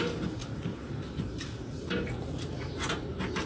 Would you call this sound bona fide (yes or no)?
no